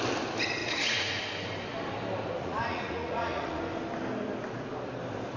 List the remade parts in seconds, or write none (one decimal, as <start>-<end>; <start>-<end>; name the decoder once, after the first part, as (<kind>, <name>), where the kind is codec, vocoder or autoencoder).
0.6-1.2 (vocoder, Vocos); 2.4-3.6